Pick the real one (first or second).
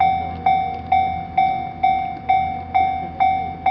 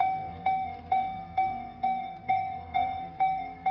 first